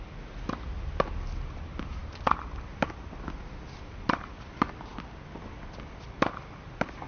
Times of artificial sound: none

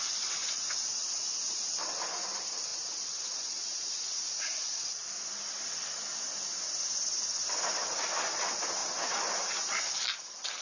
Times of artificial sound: 0.4-1.1 (vocoder, Vocos); 2.7-5.1

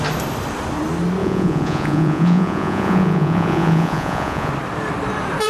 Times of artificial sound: 1.2-4.5 (vocoder, Vocos)

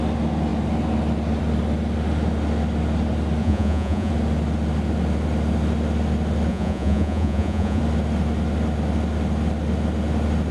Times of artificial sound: 3.4-4.1 (vocoder, Vocos); 6.5-7.8

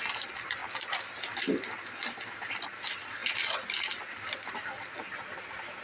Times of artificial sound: none

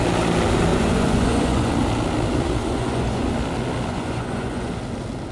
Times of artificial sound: 0.7-1.7 (vocoder, Vocos); 2.6-3.3; 3.9-4.7

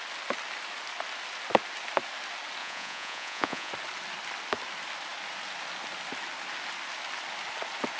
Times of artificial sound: 2.6-3.7 (vocoder, Vocos)

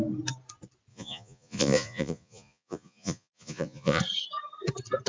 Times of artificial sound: 0.9-4.0 (vocoder, Vocos)